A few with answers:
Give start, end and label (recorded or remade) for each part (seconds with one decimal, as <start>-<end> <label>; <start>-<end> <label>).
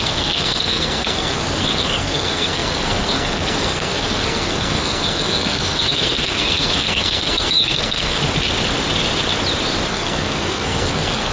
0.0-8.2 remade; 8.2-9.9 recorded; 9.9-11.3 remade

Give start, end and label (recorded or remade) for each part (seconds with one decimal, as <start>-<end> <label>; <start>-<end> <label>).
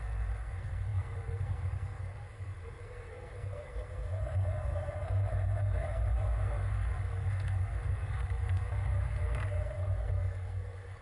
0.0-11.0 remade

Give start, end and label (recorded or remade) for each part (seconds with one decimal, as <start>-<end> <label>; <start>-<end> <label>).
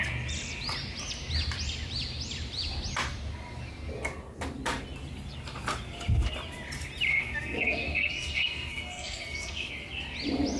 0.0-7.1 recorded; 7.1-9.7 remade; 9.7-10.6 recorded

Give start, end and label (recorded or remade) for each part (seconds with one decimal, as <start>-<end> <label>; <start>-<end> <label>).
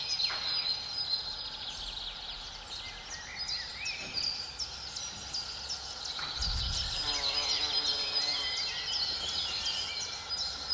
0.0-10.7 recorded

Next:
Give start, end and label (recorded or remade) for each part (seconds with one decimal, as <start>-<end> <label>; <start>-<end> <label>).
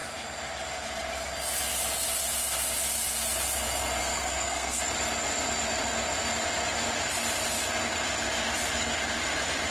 0.0-4.0 recorded; 4.0-4.8 remade; 4.8-9.7 recorded